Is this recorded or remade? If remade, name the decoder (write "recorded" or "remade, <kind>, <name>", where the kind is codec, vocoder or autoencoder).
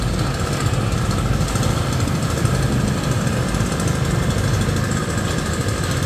recorded